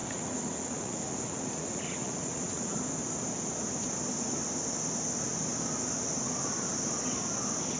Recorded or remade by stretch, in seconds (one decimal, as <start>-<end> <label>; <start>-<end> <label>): 0.0-2.8 remade; 2.8-7.8 recorded